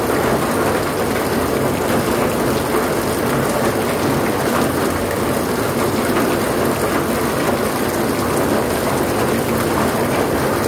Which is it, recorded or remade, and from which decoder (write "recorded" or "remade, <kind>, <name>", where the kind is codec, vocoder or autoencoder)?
recorded